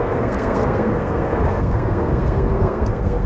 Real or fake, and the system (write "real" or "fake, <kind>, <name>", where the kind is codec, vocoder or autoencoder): fake, codec, SNAC